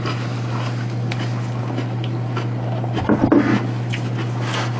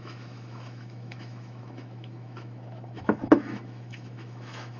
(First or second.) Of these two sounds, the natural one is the first